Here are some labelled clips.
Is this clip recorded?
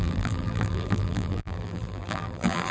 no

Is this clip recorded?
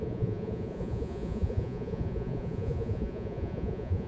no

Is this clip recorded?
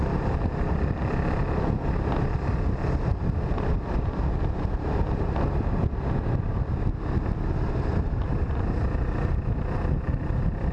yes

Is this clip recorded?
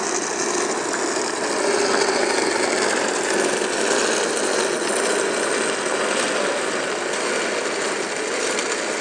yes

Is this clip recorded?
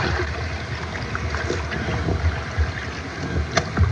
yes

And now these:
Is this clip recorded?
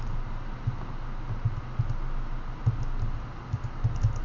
yes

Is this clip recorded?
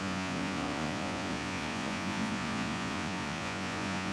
no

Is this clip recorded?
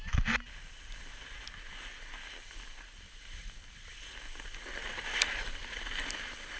yes